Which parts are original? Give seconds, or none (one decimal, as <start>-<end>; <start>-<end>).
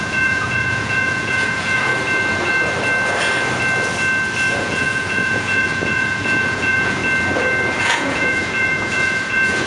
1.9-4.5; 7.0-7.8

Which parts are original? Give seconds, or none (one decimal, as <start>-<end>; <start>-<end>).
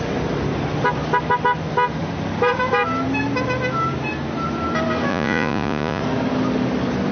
0.0-5.1; 6.0-7.1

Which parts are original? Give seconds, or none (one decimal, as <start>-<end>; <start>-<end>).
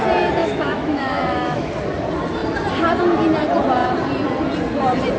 0.0-0.4; 1.7-5.2